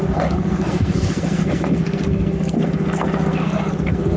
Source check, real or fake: fake